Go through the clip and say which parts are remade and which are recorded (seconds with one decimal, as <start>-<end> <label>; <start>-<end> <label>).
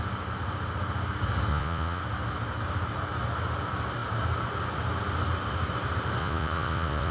0.0-1.5 recorded; 1.5-2.0 remade; 2.0-6.2 recorded; 6.2-7.1 remade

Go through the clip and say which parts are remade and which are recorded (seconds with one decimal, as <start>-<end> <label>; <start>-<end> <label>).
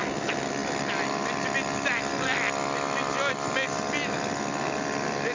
0.0-5.3 recorded